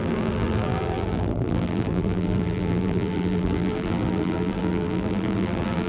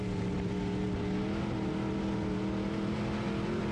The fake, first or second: first